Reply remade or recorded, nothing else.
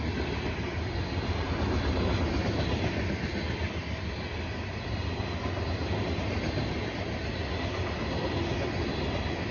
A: recorded